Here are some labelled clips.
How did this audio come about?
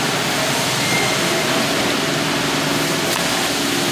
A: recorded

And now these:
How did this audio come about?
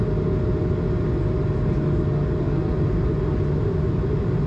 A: recorded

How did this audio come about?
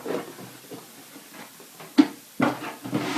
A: recorded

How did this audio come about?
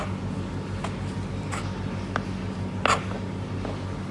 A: recorded